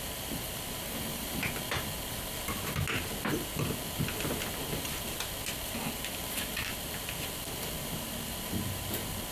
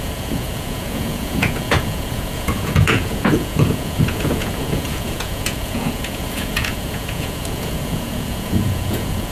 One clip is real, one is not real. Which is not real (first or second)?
second